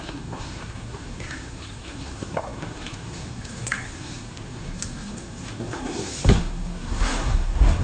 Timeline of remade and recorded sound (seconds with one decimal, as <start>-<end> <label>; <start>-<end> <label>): 0.0-7.8 remade